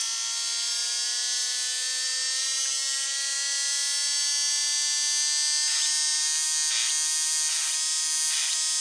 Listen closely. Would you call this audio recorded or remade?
recorded